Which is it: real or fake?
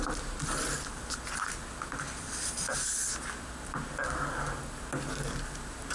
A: real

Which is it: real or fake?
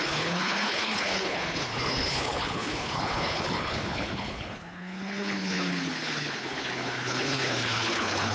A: fake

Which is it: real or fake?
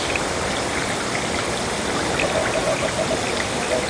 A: real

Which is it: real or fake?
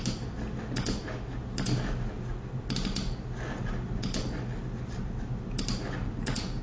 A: real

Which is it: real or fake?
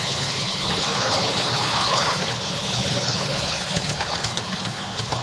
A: fake